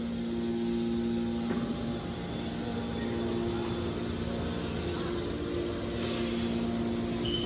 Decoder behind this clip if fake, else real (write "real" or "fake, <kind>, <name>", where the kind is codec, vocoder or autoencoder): real